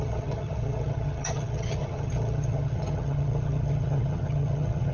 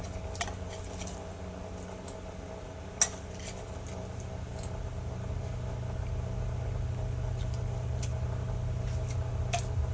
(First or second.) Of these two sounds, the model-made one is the first